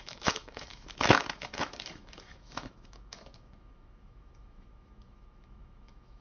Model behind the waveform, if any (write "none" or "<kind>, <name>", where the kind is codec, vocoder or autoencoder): autoencoder, DAC-VAE